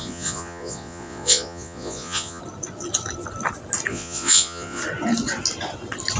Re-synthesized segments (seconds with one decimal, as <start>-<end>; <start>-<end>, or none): 0.0-2.4; 3.9-4.8

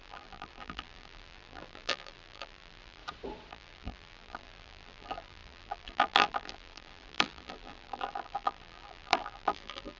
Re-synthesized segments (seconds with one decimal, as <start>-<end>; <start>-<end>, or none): 0.0-3.0; 3.5-10.0

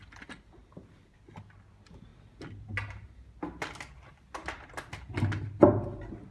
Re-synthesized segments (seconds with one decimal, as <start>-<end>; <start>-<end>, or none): none